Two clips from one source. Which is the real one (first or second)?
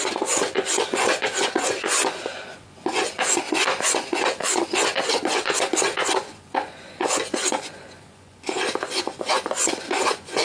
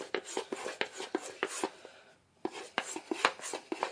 second